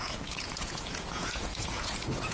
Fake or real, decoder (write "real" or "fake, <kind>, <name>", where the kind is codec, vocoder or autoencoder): fake, vocoder, Vocos